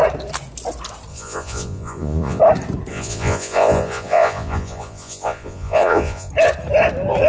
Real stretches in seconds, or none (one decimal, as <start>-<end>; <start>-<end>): 0.0-1.1; 2.4-2.9; 6.3-7.3